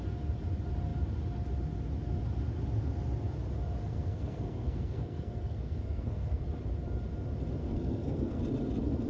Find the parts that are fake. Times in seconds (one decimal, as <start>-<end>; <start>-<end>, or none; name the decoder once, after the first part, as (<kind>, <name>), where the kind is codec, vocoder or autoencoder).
3.8-6.4 (codec, SNAC); 7.6-8.4